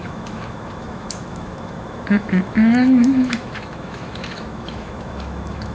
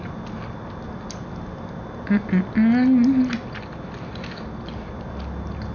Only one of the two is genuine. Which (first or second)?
second